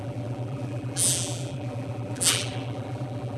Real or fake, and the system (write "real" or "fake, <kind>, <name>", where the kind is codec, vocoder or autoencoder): fake, vocoder, BigVGAN v2